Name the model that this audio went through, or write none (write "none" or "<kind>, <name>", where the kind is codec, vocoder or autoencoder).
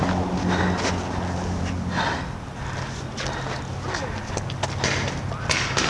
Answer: none